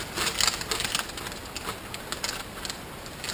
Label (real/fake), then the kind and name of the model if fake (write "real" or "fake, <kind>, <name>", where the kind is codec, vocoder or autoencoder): real